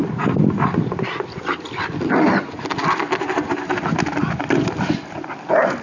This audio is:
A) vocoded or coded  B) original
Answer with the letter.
A